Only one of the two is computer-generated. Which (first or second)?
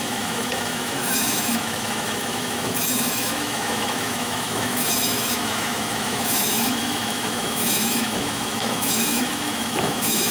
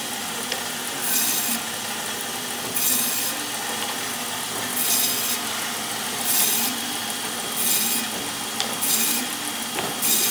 first